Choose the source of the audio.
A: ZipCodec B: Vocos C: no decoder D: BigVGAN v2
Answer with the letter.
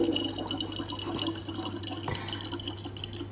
C